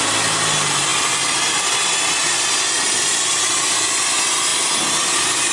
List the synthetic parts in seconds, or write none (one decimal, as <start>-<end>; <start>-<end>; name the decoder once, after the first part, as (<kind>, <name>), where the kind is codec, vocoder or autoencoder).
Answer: none